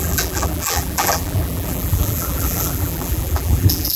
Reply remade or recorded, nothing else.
remade